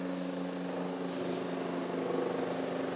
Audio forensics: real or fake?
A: real